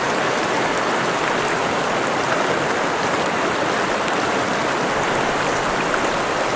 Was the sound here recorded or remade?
recorded